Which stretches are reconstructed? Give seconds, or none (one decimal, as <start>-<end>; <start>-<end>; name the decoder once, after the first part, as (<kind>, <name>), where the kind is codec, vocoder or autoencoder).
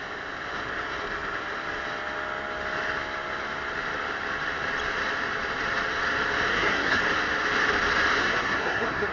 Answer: 6.5-7.0 (codec, SNAC); 8.2-9.1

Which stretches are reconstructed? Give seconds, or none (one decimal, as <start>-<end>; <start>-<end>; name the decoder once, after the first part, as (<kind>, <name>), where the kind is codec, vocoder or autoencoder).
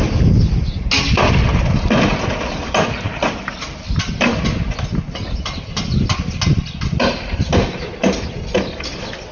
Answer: none